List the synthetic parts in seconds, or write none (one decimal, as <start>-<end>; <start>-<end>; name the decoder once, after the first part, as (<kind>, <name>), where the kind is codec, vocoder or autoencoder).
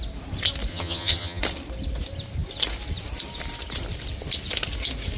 0.7-1.4 (vocoder, HiFi-GAN)